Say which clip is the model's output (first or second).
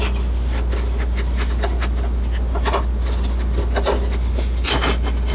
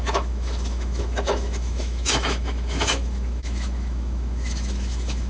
second